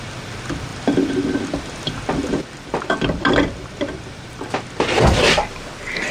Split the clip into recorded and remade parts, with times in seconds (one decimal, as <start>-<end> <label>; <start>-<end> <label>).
0.0-0.7 recorded; 0.7-1.6 remade; 1.6-2.2 recorded; 2.2-5.5 remade; 5.5-6.1 recorded